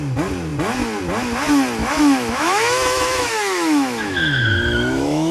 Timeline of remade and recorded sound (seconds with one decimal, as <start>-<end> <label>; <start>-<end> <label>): 0.0-1.8 recorded; 1.8-5.3 remade